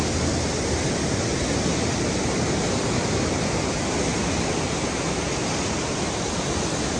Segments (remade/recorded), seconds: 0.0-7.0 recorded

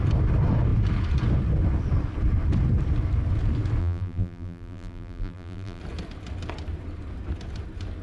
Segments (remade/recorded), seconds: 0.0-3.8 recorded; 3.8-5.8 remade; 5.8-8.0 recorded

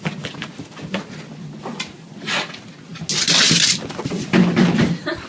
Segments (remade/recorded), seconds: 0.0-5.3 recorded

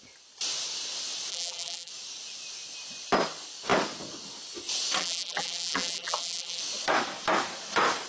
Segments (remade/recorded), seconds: 0.0-1.3 recorded; 1.3-1.9 remade; 1.9-5.0 recorded; 5.0-6.6 remade; 6.6-8.1 recorded